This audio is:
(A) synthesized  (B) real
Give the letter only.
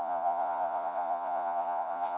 A